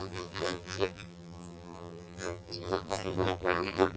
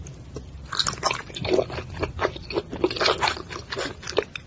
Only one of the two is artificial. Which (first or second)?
first